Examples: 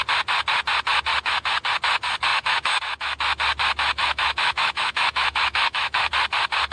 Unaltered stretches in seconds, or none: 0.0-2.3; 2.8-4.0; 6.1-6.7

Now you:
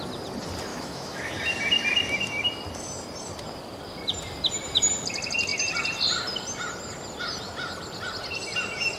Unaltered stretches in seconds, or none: 0.0-0.7; 1.3-9.0

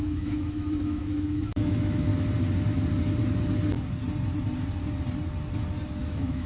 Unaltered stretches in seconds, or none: 2.1-6.0

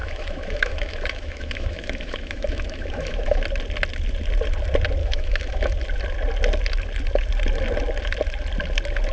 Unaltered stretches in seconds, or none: 3.4-5.0; 5.7-9.1

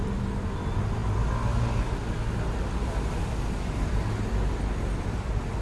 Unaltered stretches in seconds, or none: 0.0-5.6

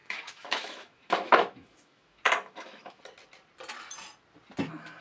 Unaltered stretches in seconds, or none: 3.0-5.0